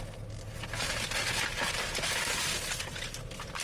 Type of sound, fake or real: real